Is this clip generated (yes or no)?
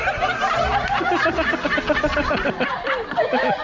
no